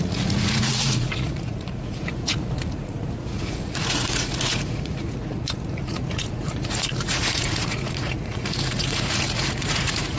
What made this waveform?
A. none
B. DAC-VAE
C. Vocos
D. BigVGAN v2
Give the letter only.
C